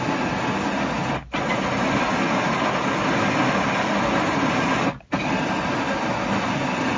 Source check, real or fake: real